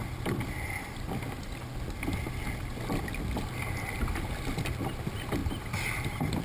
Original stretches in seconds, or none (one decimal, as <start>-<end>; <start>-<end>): 0.0-6.4